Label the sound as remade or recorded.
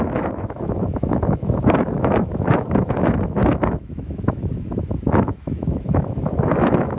remade